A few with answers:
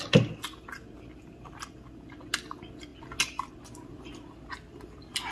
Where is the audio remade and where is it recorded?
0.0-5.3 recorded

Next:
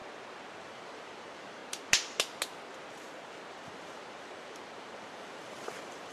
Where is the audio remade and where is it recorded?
0.0-0.6 recorded; 0.6-1.6 remade; 1.6-3.5 recorded; 3.5-6.1 remade

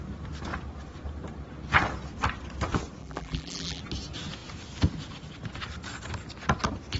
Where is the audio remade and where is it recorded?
0.0-3.0 recorded; 3.0-3.8 remade; 3.8-7.0 recorded

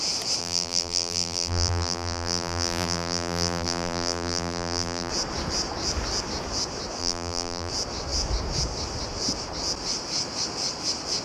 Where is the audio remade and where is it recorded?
0.0-0.4 recorded; 0.4-5.1 remade; 5.1-7.0 recorded; 7.0-7.7 remade; 7.7-11.2 recorded

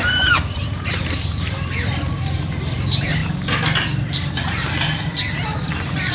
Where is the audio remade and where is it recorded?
0.0-3.2 remade; 3.2-5.3 recorded; 5.3-6.1 remade

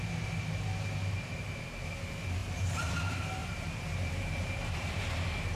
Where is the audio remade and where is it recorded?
0.0-2.4 recorded; 2.4-2.9 remade; 2.9-3.4 recorded; 3.4-5.1 remade; 5.1-5.6 recorded